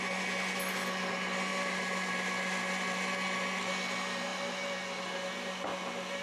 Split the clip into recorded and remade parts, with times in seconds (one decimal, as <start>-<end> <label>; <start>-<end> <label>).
0.0-6.2 recorded